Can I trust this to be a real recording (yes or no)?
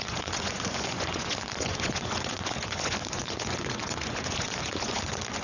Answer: no